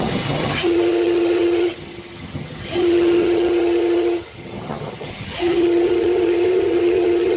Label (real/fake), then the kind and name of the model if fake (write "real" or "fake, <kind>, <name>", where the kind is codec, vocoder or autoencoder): fake, vocoder, HiFi-GAN